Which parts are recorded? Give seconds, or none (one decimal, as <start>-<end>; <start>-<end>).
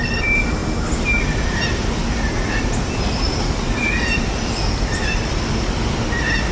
0.0-6.5